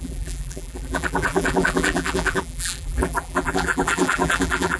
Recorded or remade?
remade